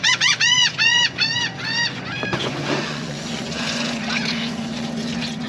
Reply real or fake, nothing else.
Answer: fake